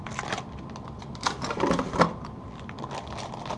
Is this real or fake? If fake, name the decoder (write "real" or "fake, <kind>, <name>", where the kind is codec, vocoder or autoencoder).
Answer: real